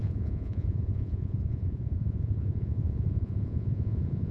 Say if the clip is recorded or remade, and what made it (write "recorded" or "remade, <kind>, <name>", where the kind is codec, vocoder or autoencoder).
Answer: remade, vocoder, Vocos